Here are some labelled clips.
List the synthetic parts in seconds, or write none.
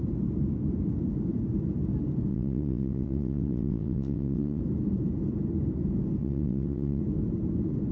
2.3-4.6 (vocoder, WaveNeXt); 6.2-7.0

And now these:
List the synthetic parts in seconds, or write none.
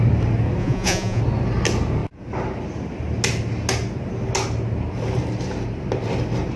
0.6-1.2 (vocoder, Vocos)